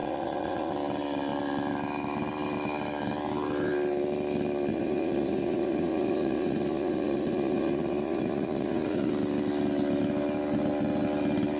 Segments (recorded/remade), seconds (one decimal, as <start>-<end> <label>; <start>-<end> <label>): 0.0-0.7 remade; 0.7-4.7 recorded; 4.7-9.1 remade; 9.1-11.6 recorded